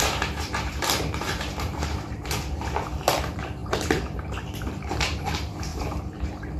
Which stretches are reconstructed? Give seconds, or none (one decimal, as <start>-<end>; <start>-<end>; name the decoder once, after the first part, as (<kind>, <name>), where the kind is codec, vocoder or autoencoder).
0.0-6.6 (vocoder, BigVGAN v2)